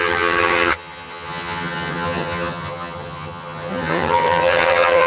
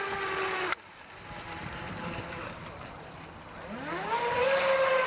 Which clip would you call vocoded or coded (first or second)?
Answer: first